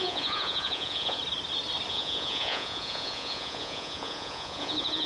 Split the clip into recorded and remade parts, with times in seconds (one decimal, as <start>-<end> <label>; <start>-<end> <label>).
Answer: 0.0-1.2 remade; 1.2-1.9 recorded; 1.9-5.1 remade